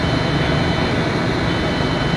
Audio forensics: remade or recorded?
recorded